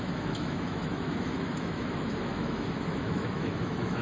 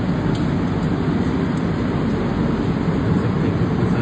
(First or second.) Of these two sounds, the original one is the second